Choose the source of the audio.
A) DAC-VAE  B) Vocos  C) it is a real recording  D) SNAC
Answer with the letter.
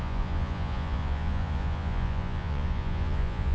B